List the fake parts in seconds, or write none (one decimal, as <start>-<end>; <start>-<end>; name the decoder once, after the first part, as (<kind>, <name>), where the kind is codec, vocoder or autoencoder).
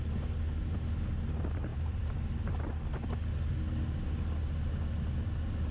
none